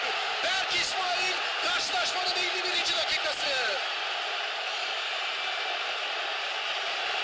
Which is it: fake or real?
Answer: real